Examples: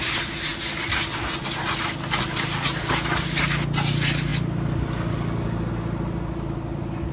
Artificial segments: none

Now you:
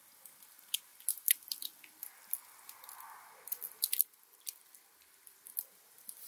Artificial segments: none

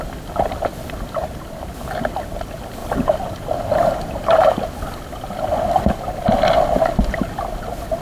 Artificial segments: 1.2-1.8 (vocoder, BigVGAN v2)

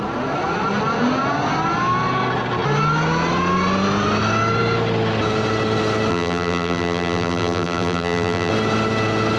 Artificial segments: 6.1-8.5 (vocoder, BigVGAN v2)

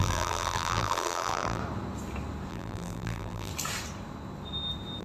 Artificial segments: 0.0-1.6 (vocoder, BigVGAN v2); 2.5-3.5